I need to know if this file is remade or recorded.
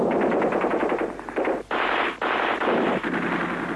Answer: recorded